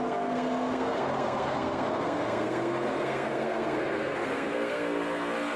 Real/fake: fake